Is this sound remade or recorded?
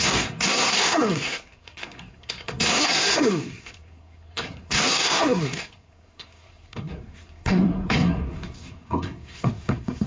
remade